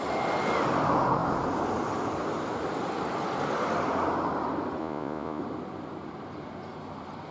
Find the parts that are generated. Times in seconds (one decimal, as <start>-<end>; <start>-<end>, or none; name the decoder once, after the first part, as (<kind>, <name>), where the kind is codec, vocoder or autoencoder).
4.8-5.4 (vocoder, Vocos)